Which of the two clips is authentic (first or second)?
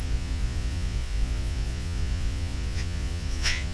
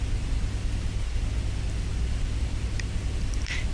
second